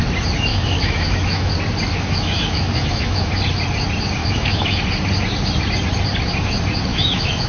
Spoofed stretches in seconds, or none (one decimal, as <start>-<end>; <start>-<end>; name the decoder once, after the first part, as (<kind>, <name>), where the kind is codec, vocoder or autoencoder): 0.5-1.5 (autoencoder, DAC-VAE); 1.9-3.3; 4.2-4.8; 6.9-7.5